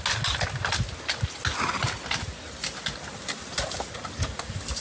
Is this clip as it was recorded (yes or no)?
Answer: yes